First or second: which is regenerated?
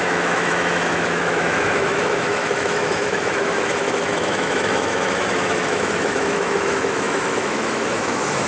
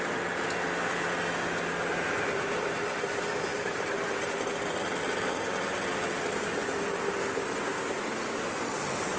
first